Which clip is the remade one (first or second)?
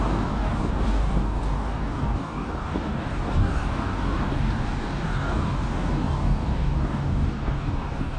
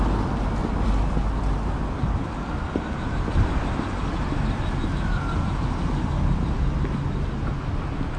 first